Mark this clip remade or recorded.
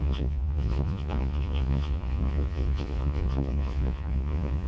remade